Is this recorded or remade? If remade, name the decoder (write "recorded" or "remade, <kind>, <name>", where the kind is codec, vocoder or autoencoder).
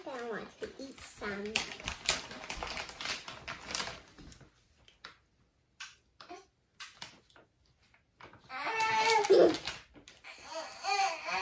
recorded